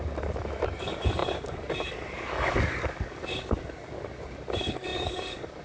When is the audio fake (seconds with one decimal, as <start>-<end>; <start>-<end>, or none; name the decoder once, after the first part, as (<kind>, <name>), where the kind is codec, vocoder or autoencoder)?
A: 0.0-5.6 (codec, DAC)